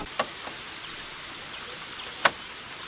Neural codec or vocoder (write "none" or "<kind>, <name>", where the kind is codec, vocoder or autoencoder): none